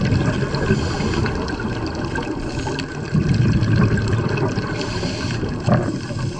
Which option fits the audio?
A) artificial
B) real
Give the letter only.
B